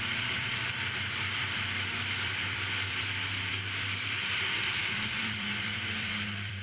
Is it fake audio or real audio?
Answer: fake